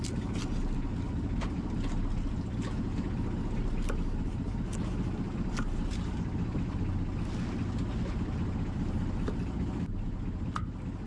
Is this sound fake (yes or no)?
no